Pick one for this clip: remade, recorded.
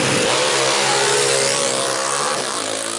recorded